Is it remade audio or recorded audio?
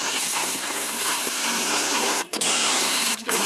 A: remade